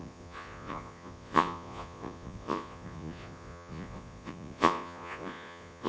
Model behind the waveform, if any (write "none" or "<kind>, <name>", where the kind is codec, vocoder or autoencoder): vocoder, Vocos